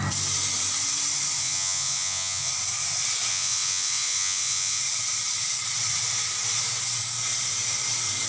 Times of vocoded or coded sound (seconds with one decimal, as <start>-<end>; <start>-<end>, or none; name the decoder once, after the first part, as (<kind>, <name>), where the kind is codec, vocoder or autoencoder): 1.4-2.5 (vocoder, Vocos); 3.3-4.8